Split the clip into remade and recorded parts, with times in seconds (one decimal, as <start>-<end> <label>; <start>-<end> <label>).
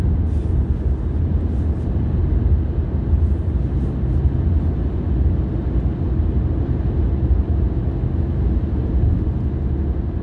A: 0.0-10.2 recorded